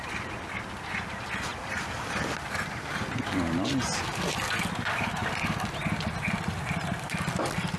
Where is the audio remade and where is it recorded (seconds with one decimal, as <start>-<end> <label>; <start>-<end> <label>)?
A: 0.0-7.8 recorded